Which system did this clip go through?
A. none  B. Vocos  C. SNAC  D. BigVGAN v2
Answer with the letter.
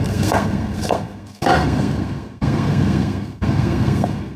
C